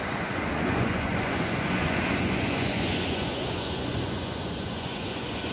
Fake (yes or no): yes